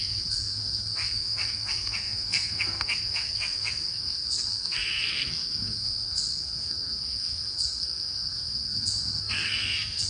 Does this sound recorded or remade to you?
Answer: remade